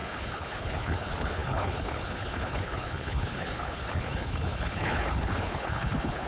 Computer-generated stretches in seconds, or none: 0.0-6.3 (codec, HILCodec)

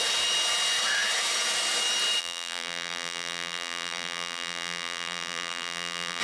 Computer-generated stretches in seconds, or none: 2.2-6.2 (vocoder, BigVGAN v2)